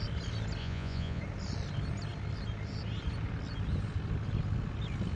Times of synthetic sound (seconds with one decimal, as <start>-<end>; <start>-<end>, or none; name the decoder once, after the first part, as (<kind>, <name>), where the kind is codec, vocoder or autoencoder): 0.6-1.2 (vocoder, Vocos)